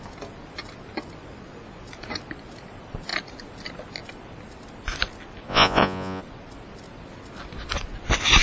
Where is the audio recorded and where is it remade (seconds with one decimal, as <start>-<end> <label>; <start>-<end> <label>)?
0.0-5.5 recorded; 5.5-6.2 remade; 6.2-8.4 recorded